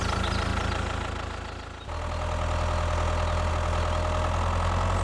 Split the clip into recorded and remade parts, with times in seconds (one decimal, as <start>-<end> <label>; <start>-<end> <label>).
0.0-5.0 recorded